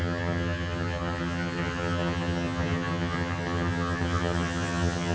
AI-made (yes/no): yes